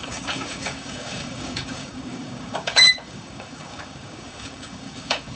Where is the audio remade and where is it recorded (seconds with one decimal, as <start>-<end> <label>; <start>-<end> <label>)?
0.0-5.4 remade